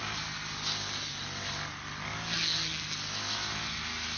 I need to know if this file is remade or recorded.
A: recorded